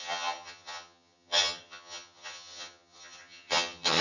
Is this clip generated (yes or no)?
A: yes